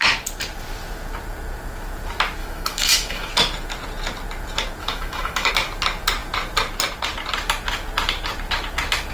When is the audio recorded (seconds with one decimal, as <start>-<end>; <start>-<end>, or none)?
0.0-2.4; 3.3-4.8; 5.5-9.1